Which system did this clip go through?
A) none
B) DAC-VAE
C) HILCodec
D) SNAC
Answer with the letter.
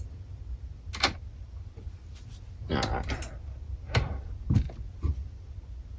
A